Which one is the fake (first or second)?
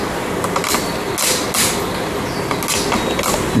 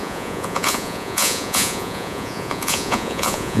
second